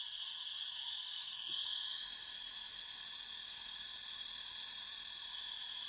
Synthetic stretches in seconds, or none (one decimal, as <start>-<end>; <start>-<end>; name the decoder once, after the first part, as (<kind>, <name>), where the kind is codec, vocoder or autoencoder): none